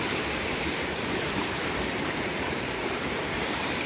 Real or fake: fake